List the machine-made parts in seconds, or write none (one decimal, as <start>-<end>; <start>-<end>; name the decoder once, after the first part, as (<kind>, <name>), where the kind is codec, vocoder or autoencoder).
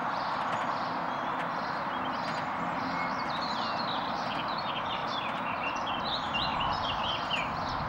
5.0-5.9 (vocoder, BigVGAN v2); 6.5-7.1